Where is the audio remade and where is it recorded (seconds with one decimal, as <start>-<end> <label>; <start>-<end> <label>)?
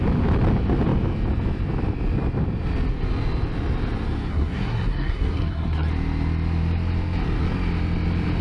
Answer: 0.0-4.3 recorded; 4.3-5.9 remade; 5.9-8.4 recorded